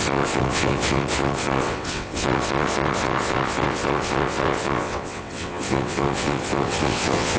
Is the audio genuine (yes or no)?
no